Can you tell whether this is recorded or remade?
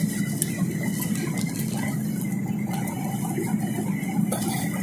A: recorded